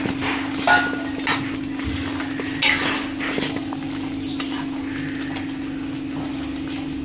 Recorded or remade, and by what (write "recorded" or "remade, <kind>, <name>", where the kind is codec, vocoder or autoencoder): recorded